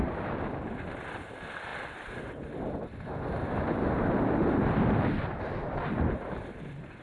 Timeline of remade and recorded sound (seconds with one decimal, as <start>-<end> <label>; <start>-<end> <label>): 0.0-7.0 recorded